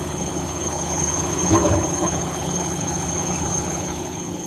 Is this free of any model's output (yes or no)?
no